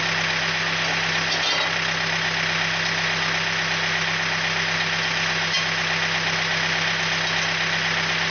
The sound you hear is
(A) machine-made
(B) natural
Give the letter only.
B